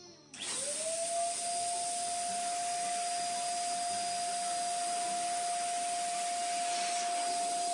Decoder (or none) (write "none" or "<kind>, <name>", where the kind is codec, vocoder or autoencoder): none